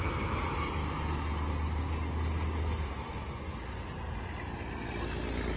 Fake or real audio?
real